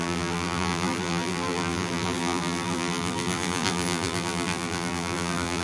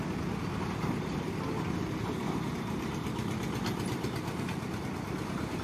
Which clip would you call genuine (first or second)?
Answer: second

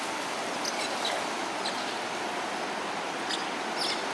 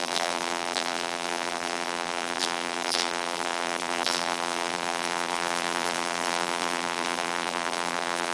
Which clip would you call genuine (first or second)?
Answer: first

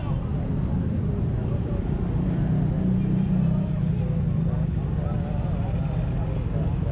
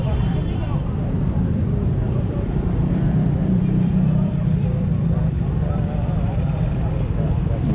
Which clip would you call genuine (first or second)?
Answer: first